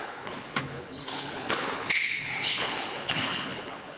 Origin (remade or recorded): remade